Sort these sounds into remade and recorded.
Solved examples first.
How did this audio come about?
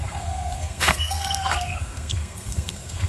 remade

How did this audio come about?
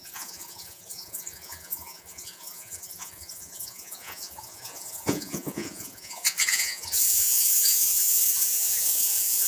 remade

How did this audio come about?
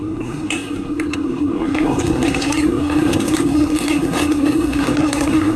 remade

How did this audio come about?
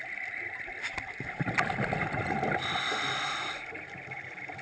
recorded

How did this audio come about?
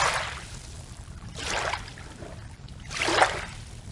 recorded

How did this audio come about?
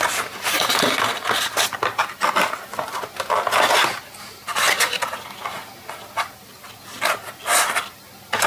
recorded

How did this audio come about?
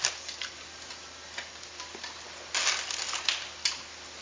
remade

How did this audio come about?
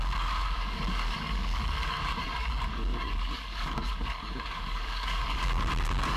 remade